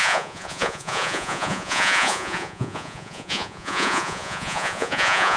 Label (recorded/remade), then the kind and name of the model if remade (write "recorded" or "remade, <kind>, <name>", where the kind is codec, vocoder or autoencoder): remade, vocoder, Vocos